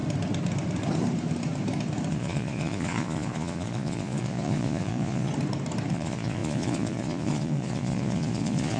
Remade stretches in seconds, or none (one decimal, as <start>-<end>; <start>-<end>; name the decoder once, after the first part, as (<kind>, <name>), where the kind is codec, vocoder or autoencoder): 2.1-5.3 (vocoder, Vocos); 5.9-8.8